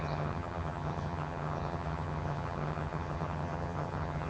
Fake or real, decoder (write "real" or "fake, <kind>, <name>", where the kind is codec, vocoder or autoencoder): fake, vocoder, HiFi-GAN